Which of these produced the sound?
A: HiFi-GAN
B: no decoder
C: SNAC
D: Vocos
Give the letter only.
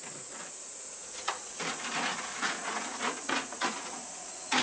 D